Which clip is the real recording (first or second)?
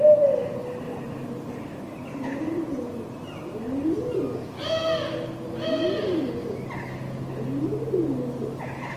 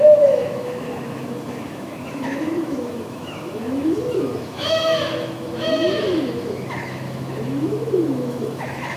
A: first